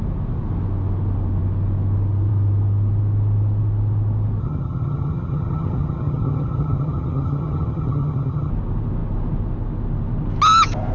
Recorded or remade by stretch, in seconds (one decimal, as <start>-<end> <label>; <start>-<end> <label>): 0.0-4.4 recorded; 4.4-8.5 remade; 8.5-10.9 recorded